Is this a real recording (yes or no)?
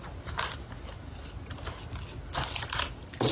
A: yes